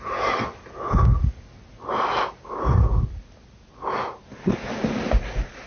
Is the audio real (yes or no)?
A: yes